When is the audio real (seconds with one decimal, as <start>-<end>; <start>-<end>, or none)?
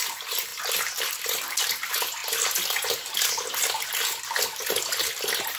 0.0-5.6